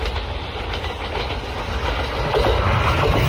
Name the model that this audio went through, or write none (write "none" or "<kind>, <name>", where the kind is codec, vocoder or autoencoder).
none